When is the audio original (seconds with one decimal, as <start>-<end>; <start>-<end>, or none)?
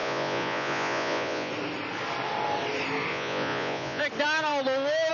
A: 1.5-3.1; 4.0-5.1